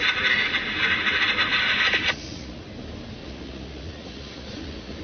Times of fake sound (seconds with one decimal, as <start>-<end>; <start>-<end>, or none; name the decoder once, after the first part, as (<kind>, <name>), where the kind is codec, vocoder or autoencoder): 2.0-2.6 (vocoder, Vocos); 3.2-5.0